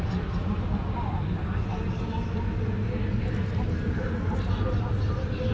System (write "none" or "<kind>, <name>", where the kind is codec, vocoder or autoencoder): none